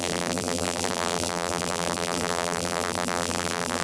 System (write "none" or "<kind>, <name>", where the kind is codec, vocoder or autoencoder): vocoder, BigVGAN v2